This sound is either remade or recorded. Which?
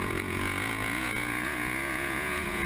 remade